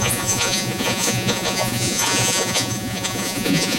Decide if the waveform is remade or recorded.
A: remade